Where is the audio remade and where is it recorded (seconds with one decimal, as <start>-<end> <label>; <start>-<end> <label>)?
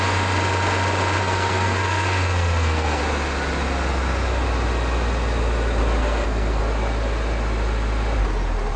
0.0-1.2 recorded; 1.2-3.0 remade; 3.0-6.0 recorded; 6.0-6.6 remade; 6.6-8.8 recorded